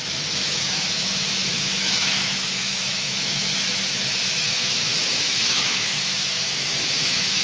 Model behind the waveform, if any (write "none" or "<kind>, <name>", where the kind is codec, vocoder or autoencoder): autoencoder, DAC-VAE